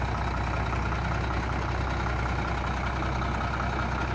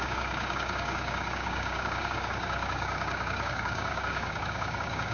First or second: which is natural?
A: first